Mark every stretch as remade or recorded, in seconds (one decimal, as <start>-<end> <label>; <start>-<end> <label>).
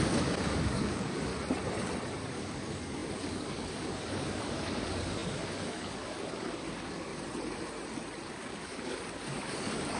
0.0-1.3 remade; 1.3-2.1 recorded; 2.1-7.1 remade; 7.1-8.3 recorded; 8.3-10.0 remade